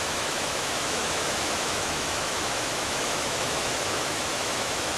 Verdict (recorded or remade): remade